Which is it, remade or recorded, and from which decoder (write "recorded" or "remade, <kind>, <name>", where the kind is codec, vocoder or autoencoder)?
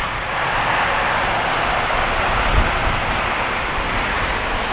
remade, vocoder, BigVGAN v2